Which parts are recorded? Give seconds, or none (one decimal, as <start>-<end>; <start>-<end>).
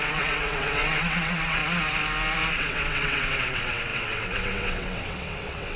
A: 1.6-2.5